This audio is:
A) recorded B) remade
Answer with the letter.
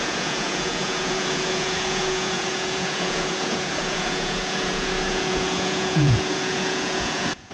B